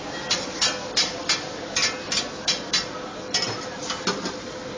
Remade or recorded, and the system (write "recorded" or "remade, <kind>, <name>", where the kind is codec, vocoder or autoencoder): recorded